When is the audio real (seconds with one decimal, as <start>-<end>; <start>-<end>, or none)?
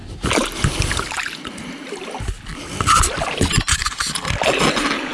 0.0-5.1